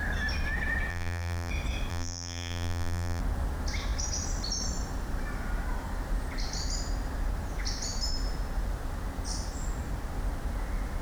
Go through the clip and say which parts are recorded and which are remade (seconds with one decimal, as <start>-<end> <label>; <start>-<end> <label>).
0.0-0.9 recorded; 0.9-1.5 remade; 1.5-1.9 recorded; 1.9-3.2 remade; 3.2-11.0 recorded